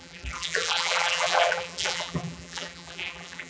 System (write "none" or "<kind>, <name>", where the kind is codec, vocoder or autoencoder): vocoder, BigVGAN v2